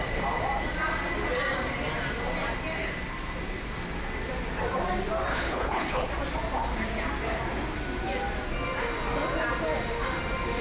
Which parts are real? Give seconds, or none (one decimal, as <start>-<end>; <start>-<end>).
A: 0.0-5.3; 6.1-10.6

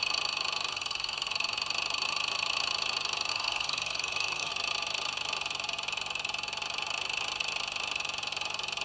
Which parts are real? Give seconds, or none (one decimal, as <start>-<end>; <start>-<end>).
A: 0.0-0.7; 1.3-3.3; 4.5-8.8

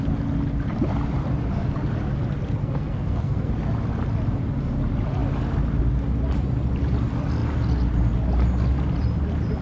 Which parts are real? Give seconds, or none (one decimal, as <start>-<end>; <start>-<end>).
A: 0.0-2.6; 3.5-9.6

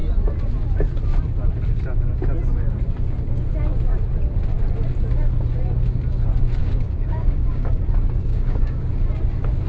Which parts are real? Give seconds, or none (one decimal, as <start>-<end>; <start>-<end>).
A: 0.0-6.6; 7.8-8.3; 8.9-9.7

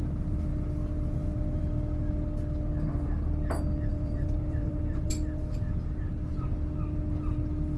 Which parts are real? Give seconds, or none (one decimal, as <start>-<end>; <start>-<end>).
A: 0.0-3.9; 5.1-7.8